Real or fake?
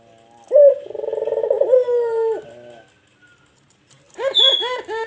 real